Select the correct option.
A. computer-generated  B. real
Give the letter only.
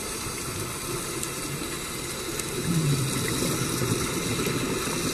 B